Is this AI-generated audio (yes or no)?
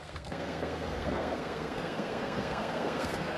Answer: yes